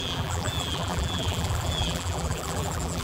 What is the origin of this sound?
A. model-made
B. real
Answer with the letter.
A